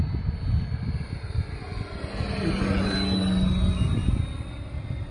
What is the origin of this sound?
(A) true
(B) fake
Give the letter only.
A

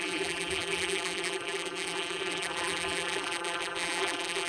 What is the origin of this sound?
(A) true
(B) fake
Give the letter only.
B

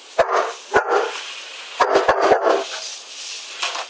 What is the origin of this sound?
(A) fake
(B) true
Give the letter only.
B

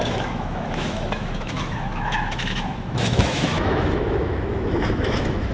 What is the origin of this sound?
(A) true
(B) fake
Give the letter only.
B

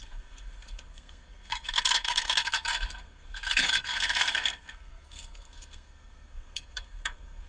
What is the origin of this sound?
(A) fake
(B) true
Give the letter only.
A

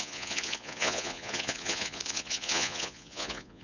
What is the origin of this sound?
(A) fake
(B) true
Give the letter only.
A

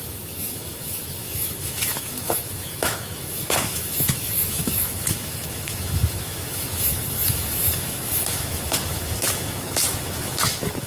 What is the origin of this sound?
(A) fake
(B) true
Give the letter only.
A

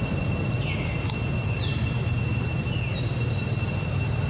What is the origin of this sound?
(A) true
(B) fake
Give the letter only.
A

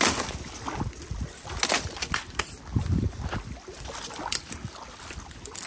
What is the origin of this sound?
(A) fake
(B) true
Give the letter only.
B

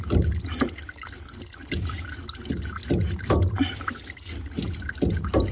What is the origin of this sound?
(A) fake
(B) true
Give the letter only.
B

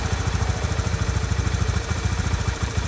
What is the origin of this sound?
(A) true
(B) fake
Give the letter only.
B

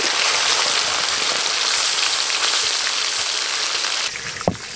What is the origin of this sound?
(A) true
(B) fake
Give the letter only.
A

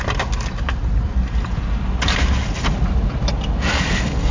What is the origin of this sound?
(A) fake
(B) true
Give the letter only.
B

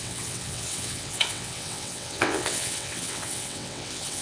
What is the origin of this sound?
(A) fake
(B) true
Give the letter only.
A